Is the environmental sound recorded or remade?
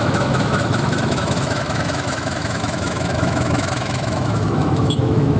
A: remade